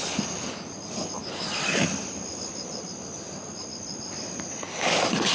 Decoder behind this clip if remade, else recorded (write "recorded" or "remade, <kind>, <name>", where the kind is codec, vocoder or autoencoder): recorded